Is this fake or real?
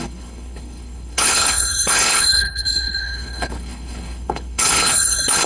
fake